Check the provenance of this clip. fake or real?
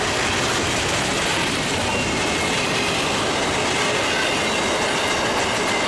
real